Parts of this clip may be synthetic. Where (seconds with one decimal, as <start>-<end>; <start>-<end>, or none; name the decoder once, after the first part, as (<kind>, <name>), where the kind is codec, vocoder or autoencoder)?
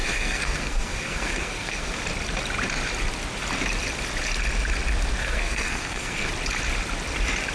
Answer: 0.0-2.0 (codec, SNAC); 5.2-6.3